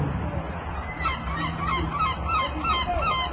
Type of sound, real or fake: real